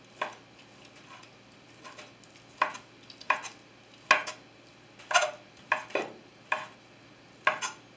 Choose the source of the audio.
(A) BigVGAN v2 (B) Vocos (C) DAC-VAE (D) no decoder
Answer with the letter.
D